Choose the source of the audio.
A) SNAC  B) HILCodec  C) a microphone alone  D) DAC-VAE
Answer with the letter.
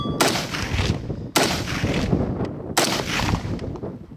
C